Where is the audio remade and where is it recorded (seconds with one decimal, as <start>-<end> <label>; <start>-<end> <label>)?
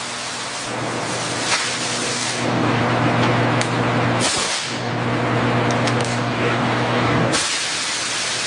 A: 0.0-2.1 recorded; 2.1-2.8 remade; 2.8-4.4 recorded; 4.4-4.9 remade; 4.9-6.0 recorded; 6.0-7.3 remade; 7.3-8.5 recorded